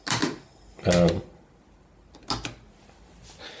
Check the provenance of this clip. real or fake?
real